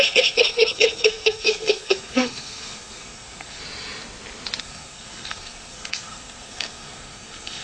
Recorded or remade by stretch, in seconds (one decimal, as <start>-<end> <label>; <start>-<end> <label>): 0.0-3.6 remade; 3.6-4.6 recorded; 4.6-7.6 remade